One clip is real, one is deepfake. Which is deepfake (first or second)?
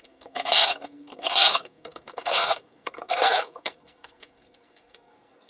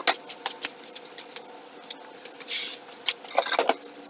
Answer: first